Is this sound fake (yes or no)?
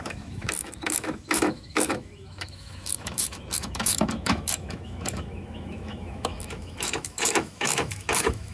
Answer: yes